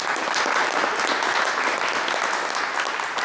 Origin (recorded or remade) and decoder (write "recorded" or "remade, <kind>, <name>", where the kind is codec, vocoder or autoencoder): recorded